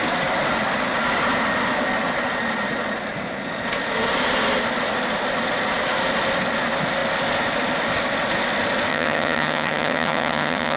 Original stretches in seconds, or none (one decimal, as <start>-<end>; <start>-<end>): 0.0-8.9